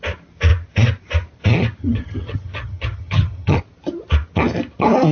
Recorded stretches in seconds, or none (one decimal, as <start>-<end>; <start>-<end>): 0.0-1.8; 3.6-5.1